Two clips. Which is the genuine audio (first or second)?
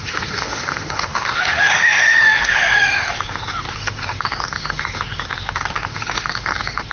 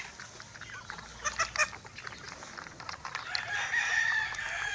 second